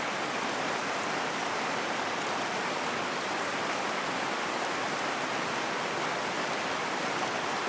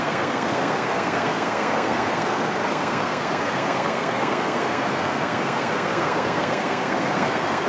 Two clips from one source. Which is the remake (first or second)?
second